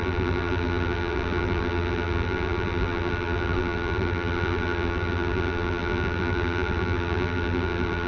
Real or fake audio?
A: fake